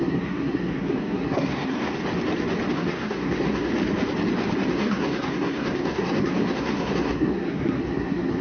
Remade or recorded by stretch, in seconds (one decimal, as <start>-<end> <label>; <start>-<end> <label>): 0.0-2.0 remade; 2.0-2.7 recorded; 2.7-3.7 remade; 3.7-4.7 recorded; 4.7-8.4 remade